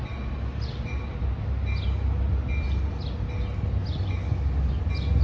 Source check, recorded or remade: recorded